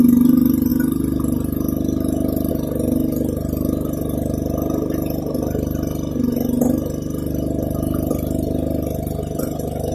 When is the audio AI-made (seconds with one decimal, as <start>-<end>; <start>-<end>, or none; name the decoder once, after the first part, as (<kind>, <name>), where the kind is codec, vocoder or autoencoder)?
none